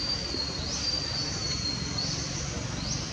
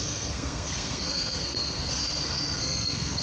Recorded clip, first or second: first